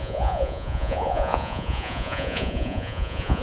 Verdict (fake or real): fake